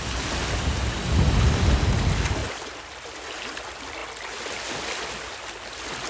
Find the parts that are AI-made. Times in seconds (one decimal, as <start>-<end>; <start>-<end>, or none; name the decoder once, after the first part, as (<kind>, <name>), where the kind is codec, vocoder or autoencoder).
none